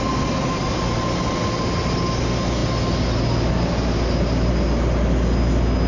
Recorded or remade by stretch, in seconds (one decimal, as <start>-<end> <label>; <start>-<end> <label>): 0.0-5.9 recorded